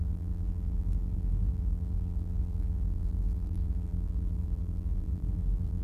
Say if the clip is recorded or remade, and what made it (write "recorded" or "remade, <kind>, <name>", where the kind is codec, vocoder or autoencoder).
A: remade, vocoder, BigVGAN v2